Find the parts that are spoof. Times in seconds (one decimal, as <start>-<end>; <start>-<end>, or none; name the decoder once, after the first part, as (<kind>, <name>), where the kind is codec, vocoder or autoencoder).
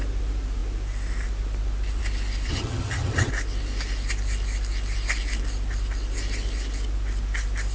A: 2.5-3.3 (vocoder, HiFi-GAN)